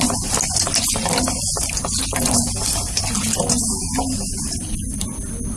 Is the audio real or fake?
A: real